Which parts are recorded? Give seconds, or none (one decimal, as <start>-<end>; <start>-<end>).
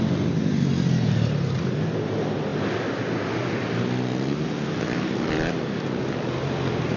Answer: 0.0-7.0